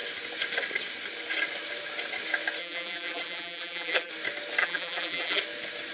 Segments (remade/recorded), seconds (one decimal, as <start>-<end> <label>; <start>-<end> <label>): 0.0-2.6 recorded; 2.6-4.1 remade; 4.1-4.6 recorded; 4.6-5.4 remade; 5.4-5.9 recorded